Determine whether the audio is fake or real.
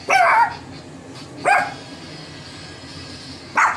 real